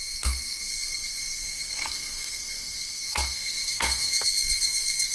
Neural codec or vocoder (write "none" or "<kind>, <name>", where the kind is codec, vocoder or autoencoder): codec, SNAC